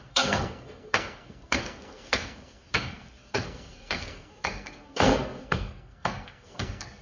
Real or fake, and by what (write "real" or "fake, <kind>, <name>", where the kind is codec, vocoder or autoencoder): fake, codec, SNAC